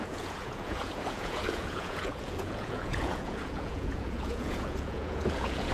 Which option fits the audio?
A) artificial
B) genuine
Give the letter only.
A